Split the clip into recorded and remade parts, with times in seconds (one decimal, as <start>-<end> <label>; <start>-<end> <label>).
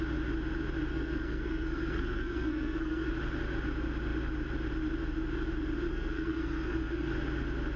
0.0-0.9 recorded; 0.9-3.1 remade; 3.1-5.9 recorded; 5.9-7.1 remade; 7.1-7.8 recorded